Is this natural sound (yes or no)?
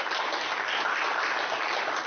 yes